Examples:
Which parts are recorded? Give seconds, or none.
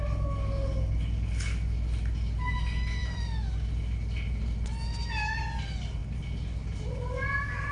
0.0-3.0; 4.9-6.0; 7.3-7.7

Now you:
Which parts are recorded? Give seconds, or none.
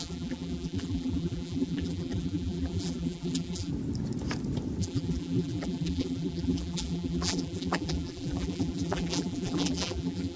3.7-4.8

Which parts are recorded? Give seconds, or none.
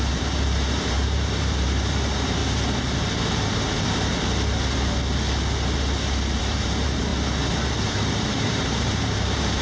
2.4-6.4; 7.1-7.9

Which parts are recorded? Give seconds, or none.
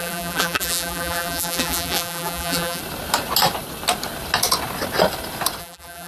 2.8-5.6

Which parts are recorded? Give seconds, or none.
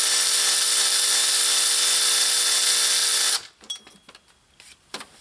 0.0-1.2; 2.4-3.0; 3.8-5.2